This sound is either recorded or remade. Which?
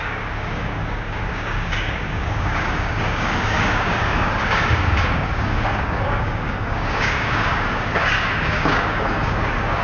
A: remade